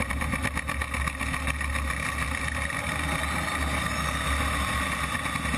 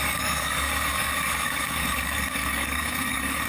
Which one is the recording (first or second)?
first